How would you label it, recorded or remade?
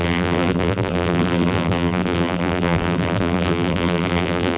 remade